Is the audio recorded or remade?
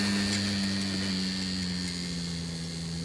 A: recorded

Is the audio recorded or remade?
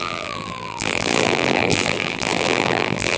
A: remade